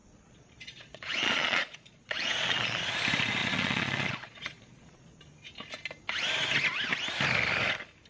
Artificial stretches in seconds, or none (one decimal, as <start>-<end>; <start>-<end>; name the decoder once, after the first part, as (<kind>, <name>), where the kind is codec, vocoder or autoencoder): 0.0-2.9 (vocoder, Vocos); 3.4-5.2